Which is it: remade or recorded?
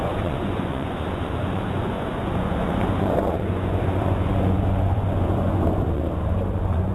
remade